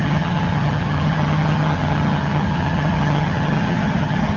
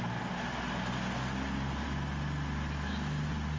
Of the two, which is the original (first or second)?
second